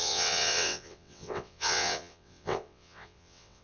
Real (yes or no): no